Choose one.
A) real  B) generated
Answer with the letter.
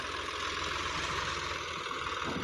A